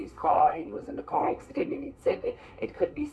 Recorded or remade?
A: remade